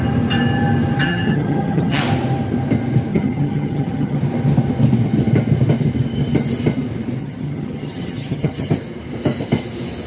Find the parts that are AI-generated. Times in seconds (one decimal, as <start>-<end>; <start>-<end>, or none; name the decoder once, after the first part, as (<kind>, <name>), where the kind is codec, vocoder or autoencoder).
1.0-2.0 (vocoder, HiFi-GAN); 3.1-4.2; 7.2-8.7